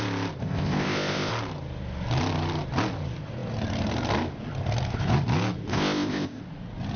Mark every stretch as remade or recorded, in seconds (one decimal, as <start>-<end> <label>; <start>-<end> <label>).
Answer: 0.0-0.4 recorded; 0.4-1.3 remade; 1.3-5.7 recorded; 5.7-6.4 remade; 6.4-7.0 recorded